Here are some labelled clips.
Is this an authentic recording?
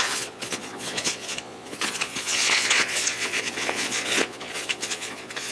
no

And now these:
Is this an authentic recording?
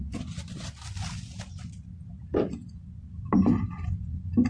yes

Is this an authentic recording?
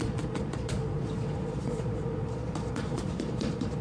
no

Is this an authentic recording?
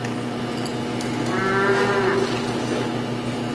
yes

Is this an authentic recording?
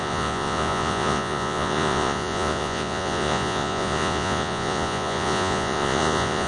no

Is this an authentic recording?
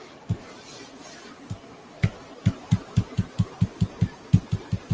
no